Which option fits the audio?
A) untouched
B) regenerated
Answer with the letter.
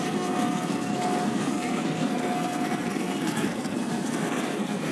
B